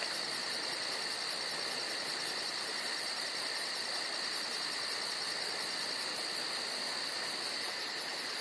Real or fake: real